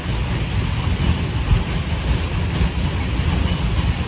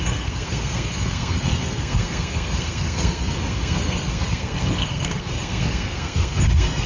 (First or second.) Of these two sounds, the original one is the first